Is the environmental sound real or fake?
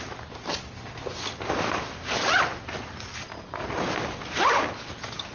real